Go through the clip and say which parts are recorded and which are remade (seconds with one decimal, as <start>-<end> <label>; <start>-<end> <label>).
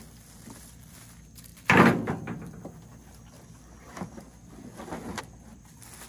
0.0-6.1 recorded